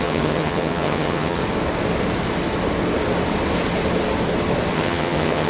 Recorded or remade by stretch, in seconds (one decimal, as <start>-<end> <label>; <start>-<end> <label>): 0.0-1.4 remade; 1.4-4.7 recorded; 4.7-5.5 remade